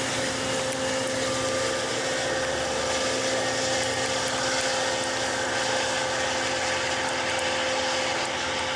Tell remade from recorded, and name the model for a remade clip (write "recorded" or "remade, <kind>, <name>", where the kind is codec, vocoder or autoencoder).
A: recorded